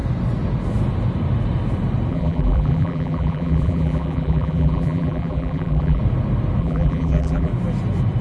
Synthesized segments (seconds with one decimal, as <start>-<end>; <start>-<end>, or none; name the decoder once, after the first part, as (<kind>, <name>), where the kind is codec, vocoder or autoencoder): 2.1-6.0 (vocoder, BigVGAN v2); 6.6-7.5